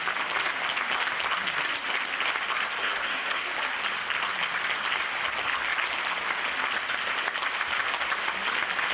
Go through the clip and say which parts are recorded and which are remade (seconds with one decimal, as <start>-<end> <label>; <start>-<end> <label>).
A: 0.0-2.8 recorded; 2.8-3.4 remade; 3.4-8.9 recorded

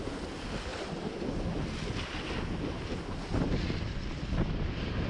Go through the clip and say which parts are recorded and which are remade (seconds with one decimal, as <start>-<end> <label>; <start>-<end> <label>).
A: 0.0-5.1 recorded

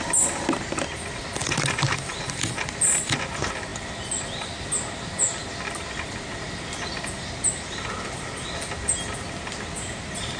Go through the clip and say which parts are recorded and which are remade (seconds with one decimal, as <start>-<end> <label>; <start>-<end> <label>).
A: 0.0-10.4 recorded

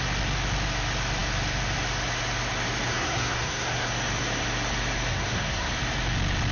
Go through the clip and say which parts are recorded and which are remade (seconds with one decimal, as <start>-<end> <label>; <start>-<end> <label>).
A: 0.0-2.9 recorded; 2.9-3.9 remade; 3.9-5.1 recorded; 5.1-5.7 remade; 5.7-6.5 recorded

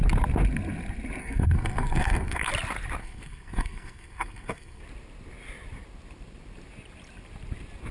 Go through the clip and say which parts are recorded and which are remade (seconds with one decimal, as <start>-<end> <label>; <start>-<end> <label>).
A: 0.0-1.2 recorded; 1.2-2.5 remade; 2.5-3.0 recorded; 3.0-4.8 remade; 4.8-7.9 recorded

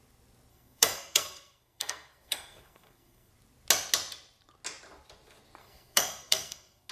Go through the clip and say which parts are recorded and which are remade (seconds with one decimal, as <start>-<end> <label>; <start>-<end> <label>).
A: 0.0-0.5 recorded; 0.5-3.3 remade; 3.3-5.6 recorded; 5.6-6.9 remade

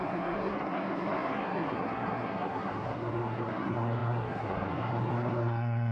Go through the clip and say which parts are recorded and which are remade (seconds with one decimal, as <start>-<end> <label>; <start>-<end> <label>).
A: 0.0-5.9 remade

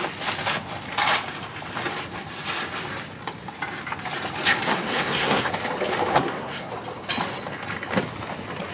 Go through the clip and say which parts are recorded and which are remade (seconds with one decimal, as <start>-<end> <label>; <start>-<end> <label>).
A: 0.0-4.7 recorded; 4.7-5.5 remade; 5.5-6.1 recorded; 6.1-6.7 remade; 6.7-8.7 recorded